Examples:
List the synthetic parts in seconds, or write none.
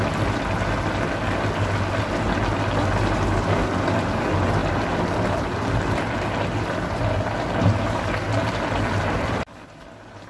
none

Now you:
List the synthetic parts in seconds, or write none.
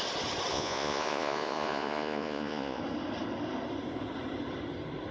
0.5-2.8 (vocoder, Vocos)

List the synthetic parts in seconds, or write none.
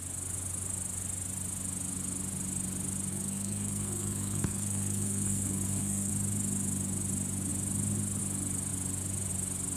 3.1-6.1 (codec, SNAC)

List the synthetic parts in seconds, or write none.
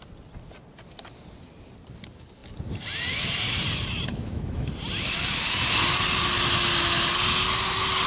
4.1-4.7 (autoencoder, DAC-VAE)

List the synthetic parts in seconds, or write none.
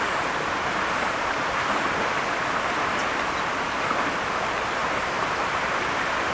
4.8-5.6 (vocoder, BigVGAN v2)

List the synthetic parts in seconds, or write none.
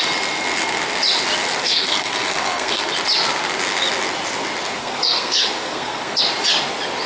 1.6-2.9 (codec, SNAC); 4.8-6.2